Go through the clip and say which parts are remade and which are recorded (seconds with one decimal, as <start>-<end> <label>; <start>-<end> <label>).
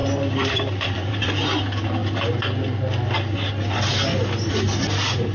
0.0-1.3 remade; 1.3-5.3 recorded